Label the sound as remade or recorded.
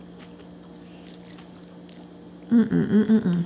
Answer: recorded